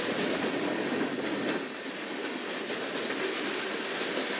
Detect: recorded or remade recorded